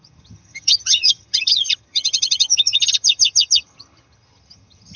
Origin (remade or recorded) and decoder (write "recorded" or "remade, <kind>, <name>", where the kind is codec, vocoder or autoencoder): remade, vocoder, HiFi-GAN